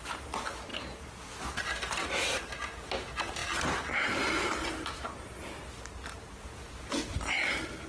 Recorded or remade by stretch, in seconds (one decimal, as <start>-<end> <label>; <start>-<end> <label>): 0.0-3.4 recorded; 3.4-5.2 remade; 5.2-7.9 recorded